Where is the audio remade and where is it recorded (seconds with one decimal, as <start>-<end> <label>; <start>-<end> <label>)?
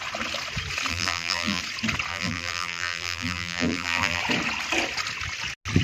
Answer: 0.0-0.9 recorded; 0.9-1.6 remade; 1.6-2.1 recorded; 2.1-4.2 remade; 4.2-5.8 recorded